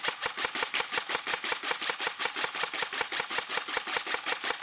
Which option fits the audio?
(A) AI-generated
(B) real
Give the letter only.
B